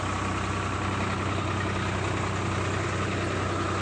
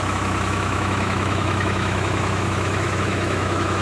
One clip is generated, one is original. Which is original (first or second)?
first